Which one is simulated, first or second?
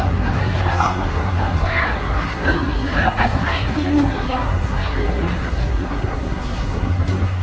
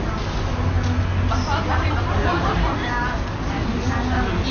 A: first